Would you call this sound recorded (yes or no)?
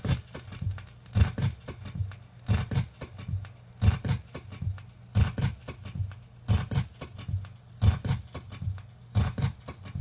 yes